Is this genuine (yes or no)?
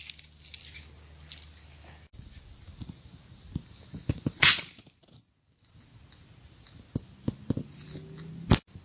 yes